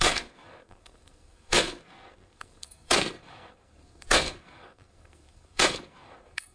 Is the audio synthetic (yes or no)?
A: yes